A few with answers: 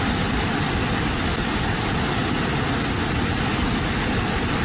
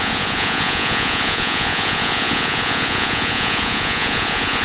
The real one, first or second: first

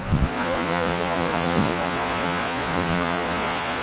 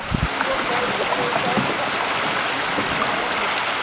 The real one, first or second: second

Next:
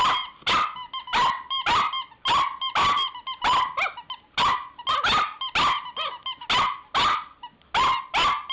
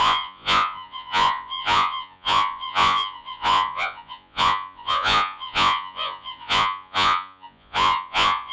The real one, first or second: first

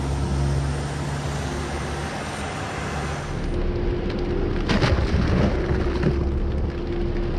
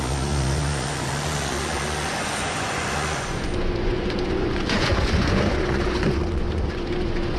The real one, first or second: first